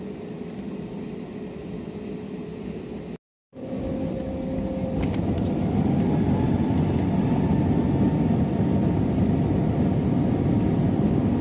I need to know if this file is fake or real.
real